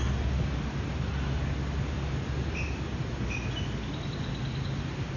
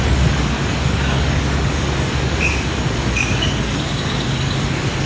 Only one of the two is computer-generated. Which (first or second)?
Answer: second